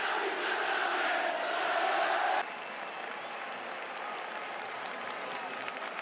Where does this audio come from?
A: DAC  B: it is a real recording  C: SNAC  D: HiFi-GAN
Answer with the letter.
B